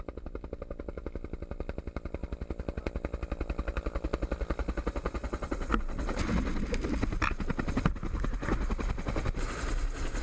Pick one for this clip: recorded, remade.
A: recorded